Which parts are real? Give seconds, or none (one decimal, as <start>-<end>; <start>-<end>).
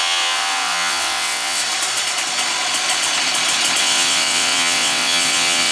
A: 1.6-3.8